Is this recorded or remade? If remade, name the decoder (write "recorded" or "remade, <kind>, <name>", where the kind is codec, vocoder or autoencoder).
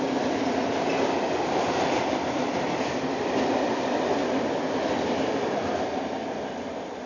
recorded